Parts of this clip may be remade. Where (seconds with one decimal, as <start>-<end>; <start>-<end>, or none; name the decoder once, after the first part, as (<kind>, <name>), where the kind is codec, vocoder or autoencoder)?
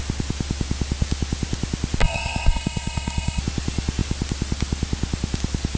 2.0-3.4 (codec, SNAC)